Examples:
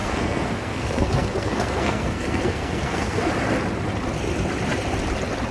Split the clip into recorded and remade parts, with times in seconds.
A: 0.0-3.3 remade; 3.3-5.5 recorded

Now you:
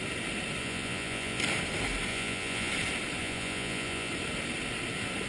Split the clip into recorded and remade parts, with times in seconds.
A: 0.0-0.6 recorded; 0.6-1.4 remade; 1.4-2.1 recorded; 2.1-2.7 remade; 2.7-3.2 recorded; 3.2-4.1 remade; 4.1-5.3 recorded

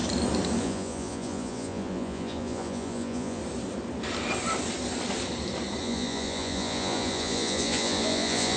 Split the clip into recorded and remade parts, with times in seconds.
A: 0.0-0.6 recorded; 0.6-3.4 remade; 3.4-5.8 recorded; 5.8-8.6 remade

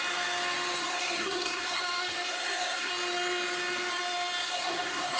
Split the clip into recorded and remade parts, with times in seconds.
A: 0.0-0.8 recorded; 0.8-1.8 remade; 1.8-2.3 recorded; 2.3-2.9 remade; 2.9-4.4 recorded; 4.4-5.2 remade

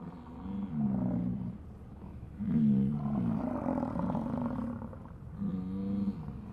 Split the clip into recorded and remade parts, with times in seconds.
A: 0.0-1.9 recorded; 1.9-2.6 remade; 2.6-6.5 recorded

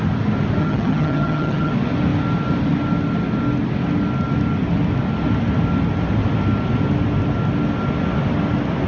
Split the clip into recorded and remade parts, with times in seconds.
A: 0.0-0.6 recorded; 0.6-1.7 remade; 1.7-8.9 recorded